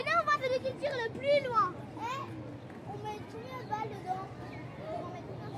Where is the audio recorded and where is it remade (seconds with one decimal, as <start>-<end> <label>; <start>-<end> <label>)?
0.0-5.6 recorded